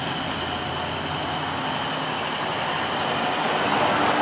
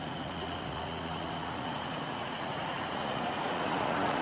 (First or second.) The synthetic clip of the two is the second